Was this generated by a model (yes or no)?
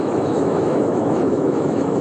yes